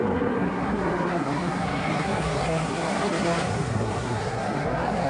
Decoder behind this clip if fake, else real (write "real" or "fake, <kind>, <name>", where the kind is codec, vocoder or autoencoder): fake, codec, SNAC